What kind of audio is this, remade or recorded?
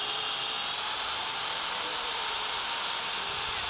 remade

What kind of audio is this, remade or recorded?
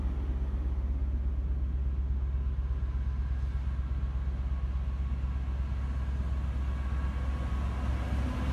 recorded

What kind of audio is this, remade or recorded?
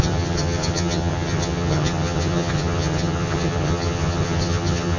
remade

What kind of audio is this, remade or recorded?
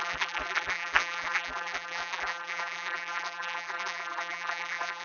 remade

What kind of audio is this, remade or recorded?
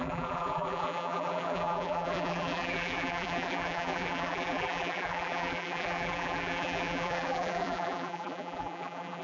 remade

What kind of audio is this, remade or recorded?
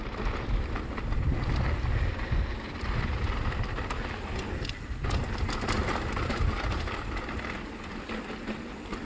recorded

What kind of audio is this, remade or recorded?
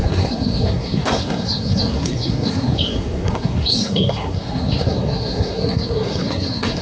remade